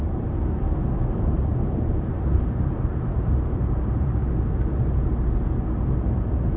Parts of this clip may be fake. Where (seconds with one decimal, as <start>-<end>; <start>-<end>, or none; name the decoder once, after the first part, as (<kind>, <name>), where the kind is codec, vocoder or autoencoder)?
1.5-5.5 (vocoder, BigVGAN v2)